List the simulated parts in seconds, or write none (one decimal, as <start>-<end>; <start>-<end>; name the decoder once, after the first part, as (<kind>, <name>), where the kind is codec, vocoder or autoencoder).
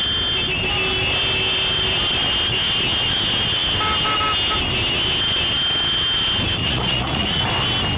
6.6-7.4 (vocoder, Vocos)